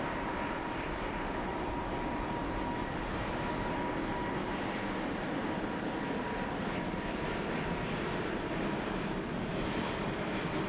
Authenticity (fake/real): fake